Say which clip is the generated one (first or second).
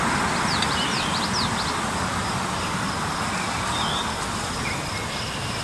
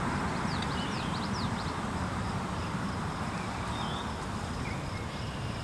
second